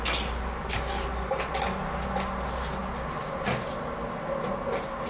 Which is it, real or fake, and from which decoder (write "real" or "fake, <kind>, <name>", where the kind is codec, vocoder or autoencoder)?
real